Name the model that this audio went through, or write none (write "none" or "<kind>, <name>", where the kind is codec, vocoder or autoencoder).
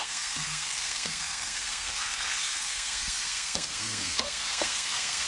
codec, SNAC